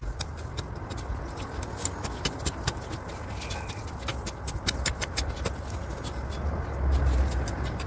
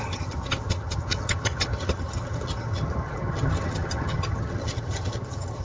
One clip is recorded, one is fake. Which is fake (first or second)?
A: second